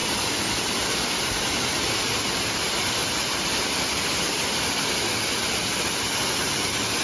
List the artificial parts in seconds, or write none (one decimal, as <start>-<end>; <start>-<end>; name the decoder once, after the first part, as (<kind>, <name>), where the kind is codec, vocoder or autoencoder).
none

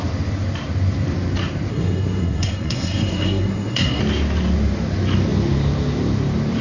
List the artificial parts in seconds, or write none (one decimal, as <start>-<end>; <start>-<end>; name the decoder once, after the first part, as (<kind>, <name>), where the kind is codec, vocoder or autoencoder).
1.7-4.0 (codec, SNAC)

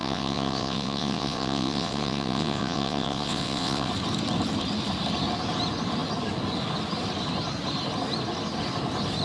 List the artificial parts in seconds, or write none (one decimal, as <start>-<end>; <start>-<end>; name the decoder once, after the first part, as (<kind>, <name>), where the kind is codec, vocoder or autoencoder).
0.0-3.9 (vocoder, WaveNeXt)

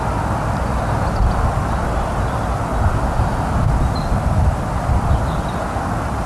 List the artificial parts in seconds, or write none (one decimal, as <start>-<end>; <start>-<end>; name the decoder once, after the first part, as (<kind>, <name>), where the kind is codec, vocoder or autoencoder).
none

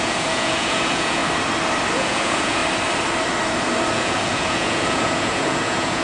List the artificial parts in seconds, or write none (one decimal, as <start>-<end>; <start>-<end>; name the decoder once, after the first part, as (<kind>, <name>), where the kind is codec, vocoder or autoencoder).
0.0-1.2 (vocoder, Vocos); 1.9-2.6; 3.9-6.0

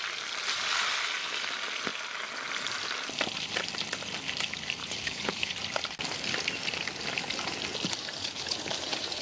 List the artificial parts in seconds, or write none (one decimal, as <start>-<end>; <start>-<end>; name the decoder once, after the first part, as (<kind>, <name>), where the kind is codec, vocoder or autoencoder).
4.8-5.5 (codec, HILCodec); 8.2-9.2

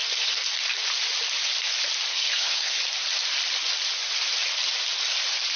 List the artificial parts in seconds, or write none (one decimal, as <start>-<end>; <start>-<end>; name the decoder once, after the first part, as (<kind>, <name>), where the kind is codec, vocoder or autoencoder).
2.1-2.8 (codec, HILCodec)

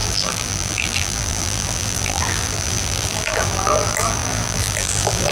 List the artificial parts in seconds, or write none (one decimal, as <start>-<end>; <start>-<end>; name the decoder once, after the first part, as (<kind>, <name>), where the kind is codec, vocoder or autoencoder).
0.0-5.3 (vocoder, BigVGAN v2)